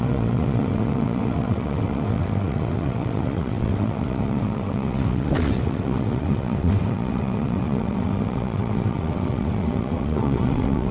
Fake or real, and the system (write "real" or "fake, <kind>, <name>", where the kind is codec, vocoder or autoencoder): fake, vocoder, WaveNeXt